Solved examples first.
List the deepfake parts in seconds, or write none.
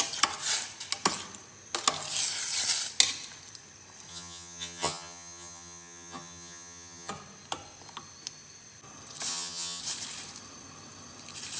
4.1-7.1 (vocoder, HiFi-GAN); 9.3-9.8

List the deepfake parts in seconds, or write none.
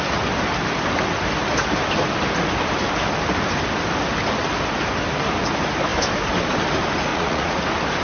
7.1-7.6 (vocoder, Vocos)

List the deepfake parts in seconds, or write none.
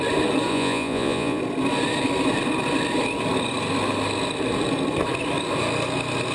0.5-1.4 (vocoder, Vocos)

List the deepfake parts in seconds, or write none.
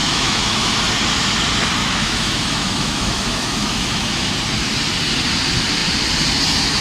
0.0-0.7 (autoencoder, DAC-VAE); 1.8-4.3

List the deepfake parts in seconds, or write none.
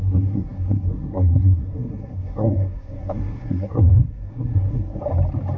0.0-5.0 (codec, SNAC)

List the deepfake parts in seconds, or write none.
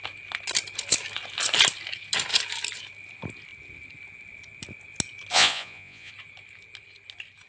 5.3-6.1 (vocoder, Vocos)